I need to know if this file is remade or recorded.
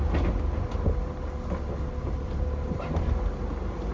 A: recorded